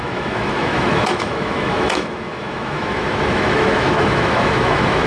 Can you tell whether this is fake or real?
fake